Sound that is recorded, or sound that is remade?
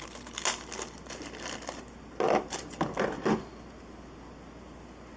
recorded